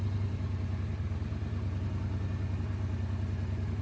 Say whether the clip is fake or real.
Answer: real